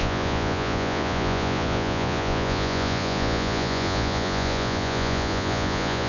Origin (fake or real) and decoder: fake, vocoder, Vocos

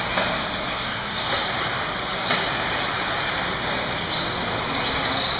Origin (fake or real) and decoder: real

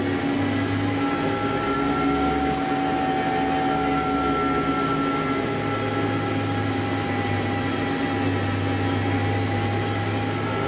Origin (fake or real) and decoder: real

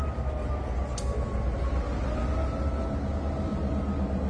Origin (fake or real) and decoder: real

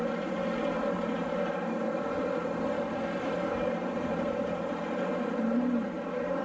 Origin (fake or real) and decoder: fake, vocoder, BigVGAN v2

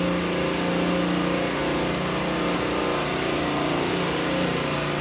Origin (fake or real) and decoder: real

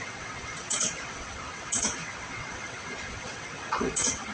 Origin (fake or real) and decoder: fake, vocoder, WaveNeXt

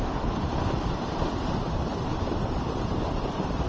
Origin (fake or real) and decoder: fake, vocoder, BigVGAN v2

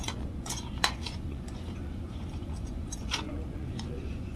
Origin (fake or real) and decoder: fake, vocoder, Vocos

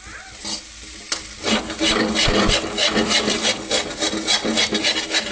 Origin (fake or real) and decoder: real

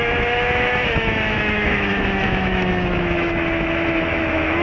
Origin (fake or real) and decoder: fake, autoencoder, DAC-VAE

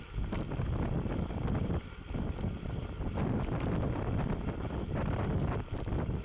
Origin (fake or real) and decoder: real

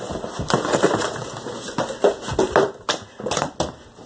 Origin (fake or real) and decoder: real